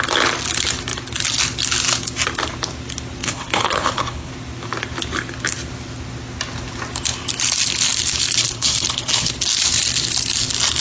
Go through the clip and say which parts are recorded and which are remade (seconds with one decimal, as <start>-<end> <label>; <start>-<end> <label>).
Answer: 0.0-3.2 recorded; 3.2-4.3 remade; 4.3-8.4 recorded; 8.4-9.3 remade; 9.3-10.8 recorded

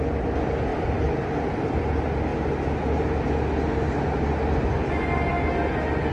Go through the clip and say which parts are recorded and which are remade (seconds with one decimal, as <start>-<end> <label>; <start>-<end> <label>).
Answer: 0.0-0.7 recorded; 0.7-1.8 remade; 1.8-6.1 recorded

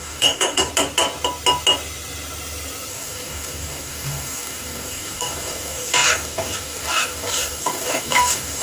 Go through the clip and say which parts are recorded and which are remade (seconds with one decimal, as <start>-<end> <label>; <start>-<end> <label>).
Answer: 0.0-0.7 remade; 0.7-2.9 recorded; 2.9-8.6 remade

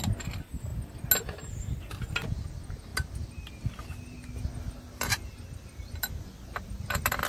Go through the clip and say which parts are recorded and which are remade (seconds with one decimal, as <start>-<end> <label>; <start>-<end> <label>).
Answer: 0.0-7.3 recorded